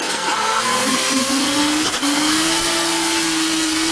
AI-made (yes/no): yes